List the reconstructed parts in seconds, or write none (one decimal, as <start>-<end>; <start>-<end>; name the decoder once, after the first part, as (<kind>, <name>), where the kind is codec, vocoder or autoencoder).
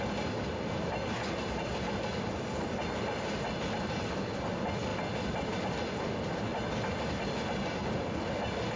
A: none